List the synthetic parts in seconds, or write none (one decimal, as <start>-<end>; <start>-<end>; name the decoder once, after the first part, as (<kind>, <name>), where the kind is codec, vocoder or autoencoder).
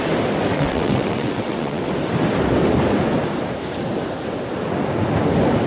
0.5-1.8 (vocoder, WaveNeXt)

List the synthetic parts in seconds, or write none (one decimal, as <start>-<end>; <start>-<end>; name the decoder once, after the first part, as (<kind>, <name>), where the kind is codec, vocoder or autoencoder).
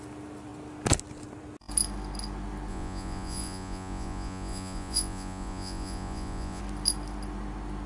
2.7-6.6 (vocoder, Vocos)